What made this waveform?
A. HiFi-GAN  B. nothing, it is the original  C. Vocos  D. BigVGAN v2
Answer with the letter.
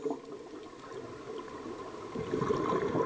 B